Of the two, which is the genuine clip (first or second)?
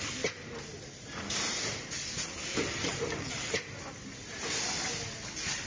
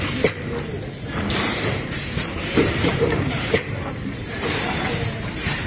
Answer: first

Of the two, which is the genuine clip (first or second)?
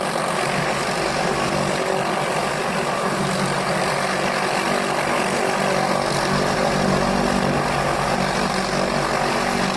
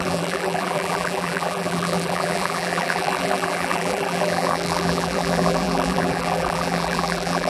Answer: first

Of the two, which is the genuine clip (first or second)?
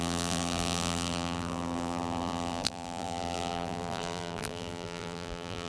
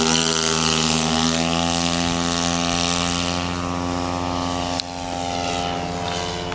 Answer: second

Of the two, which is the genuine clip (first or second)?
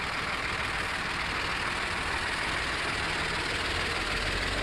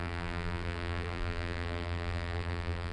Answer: first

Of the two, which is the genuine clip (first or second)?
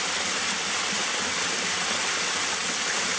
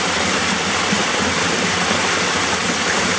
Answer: first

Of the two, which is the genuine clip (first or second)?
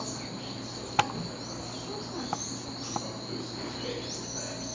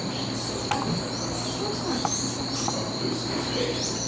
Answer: first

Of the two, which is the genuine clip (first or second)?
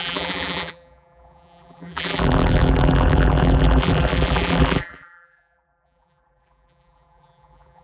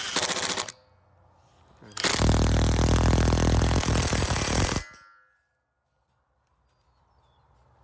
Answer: second